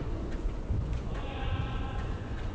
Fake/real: fake